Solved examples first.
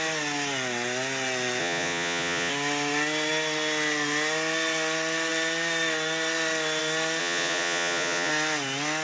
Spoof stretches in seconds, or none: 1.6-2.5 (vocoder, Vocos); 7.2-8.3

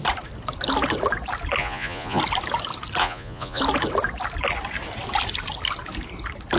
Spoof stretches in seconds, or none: 1.6-2.2 (vocoder, Vocos); 3.0-3.6